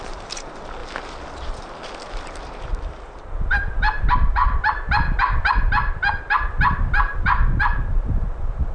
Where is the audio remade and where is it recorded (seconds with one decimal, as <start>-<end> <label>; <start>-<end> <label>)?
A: 0.0-0.8 remade; 0.8-2.6 recorded; 2.6-4.4 remade; 4.4-6.2 recorded; 6.2-8.7 remade